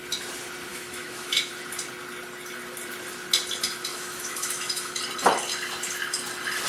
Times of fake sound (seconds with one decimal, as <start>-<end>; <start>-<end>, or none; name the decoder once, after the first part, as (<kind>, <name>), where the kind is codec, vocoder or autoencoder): 0.7-1.5 (autoencoder, DAC-VAE); 3.9-5.0